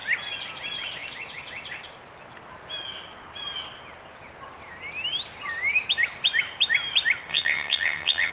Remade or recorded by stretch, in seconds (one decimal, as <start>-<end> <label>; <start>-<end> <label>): 0.0-7.3 recorded; 7.3-8.3 remade